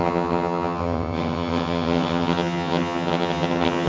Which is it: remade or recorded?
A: remade